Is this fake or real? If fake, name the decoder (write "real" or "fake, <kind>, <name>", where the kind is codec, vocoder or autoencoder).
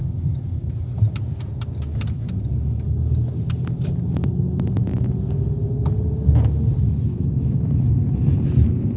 real